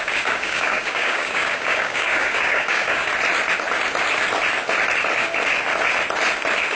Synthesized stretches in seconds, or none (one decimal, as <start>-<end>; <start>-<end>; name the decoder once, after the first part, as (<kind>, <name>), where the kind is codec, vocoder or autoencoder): 0.0-3.1 (codec, DAC)